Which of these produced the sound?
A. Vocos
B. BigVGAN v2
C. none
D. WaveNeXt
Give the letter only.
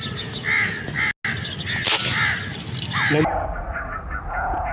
C